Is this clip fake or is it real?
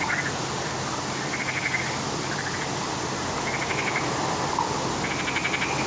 real